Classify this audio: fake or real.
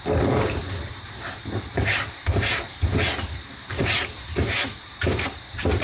fake